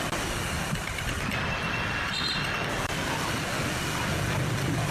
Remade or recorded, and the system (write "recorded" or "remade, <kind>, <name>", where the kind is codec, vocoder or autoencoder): recorded